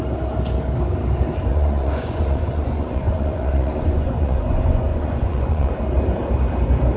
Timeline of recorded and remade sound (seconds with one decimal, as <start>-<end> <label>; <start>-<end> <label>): 0.0-1.5 recorded; 1.5-5.7 remade; 5.7-7.0 recorded